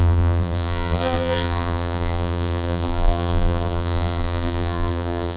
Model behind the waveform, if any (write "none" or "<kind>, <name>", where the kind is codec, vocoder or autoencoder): vocoder, BigVGAN v2